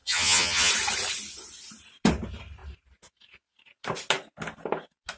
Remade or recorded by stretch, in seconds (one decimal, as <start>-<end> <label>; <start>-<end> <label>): 0.0-0.7 remade; 0.7-5.2 recorded